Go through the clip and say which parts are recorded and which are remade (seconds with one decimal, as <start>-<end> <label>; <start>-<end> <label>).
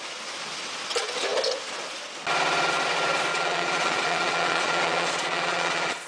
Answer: 0.0-3.3 recorded; 3.3-6.1 remade